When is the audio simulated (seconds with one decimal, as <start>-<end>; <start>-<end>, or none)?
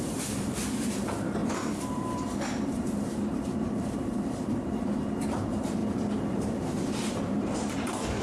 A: 0.0-5.8; 6.3-8.2